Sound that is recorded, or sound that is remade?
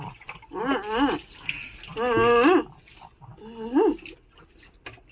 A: recorded